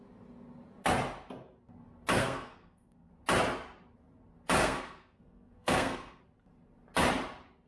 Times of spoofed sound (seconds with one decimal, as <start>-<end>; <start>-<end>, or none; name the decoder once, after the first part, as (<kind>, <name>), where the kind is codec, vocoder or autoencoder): 2.2-3.1 (codec, SNAC); 4.6-6.2